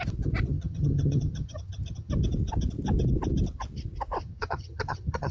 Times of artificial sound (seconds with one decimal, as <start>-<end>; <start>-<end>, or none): 0.5-2.1; 4.2-5.3